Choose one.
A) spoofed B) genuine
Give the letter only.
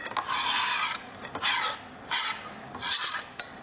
B